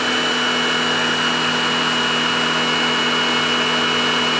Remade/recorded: recorded